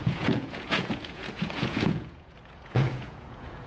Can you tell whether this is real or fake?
fake